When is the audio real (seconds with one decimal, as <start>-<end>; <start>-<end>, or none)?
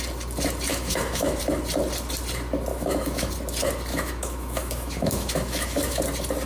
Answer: 0.0-0.7; 1.4-2.7; 3.3-3.9; 6.0-6.5